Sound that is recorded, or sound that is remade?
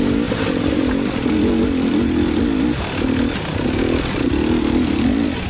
recorded